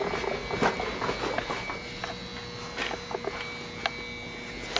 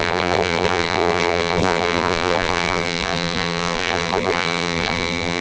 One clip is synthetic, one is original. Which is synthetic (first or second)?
second